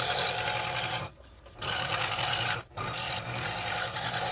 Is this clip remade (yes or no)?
yes